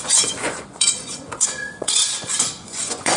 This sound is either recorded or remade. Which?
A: remade